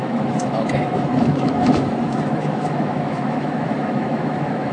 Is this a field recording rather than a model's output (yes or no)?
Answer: no